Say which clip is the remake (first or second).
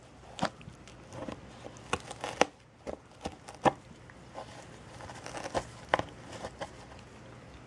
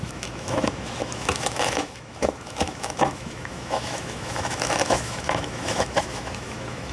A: second